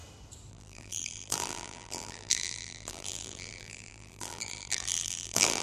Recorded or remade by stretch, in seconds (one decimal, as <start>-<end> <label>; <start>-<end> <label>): 0.0-0.5 recorded; 0.5-5.6 remade